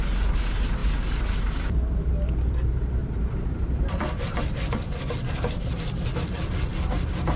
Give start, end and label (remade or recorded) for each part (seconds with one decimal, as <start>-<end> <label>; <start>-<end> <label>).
0.0-0.8 recorded; 0.8-2.1 remade; 2.1-3.0 recorded; 3.0-3.9 remade; 3.9-7.4 recorded